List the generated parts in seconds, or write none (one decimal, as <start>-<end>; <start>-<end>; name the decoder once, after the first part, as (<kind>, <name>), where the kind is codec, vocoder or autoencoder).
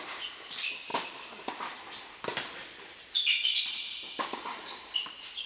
0.9-3.7 (vocoder, BigVGAN v2)